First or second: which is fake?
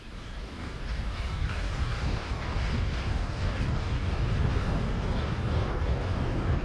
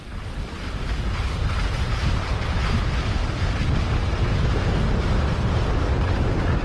first